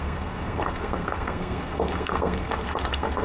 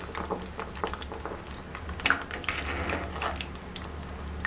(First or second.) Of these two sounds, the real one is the second